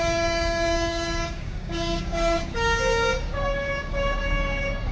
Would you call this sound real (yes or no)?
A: no